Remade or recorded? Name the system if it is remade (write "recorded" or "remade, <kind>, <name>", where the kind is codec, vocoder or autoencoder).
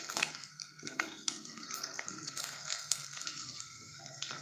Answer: remade, codec, SNAC